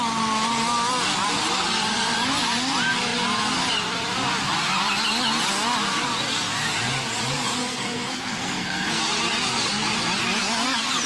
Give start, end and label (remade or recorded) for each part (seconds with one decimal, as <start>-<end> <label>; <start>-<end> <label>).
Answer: 0.0-7.6 recorded; 7.6-9.0 remade; 9.0-11.1 recorded